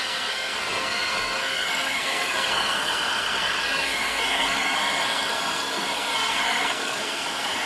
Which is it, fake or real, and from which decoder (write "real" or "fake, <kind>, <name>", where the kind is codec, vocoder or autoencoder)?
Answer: fake, codec, SNAC